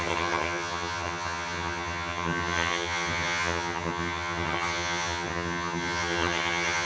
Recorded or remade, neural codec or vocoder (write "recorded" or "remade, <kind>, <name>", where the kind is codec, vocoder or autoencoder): remade, vocoder, HiFi-GAN